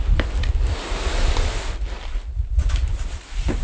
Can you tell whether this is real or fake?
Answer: real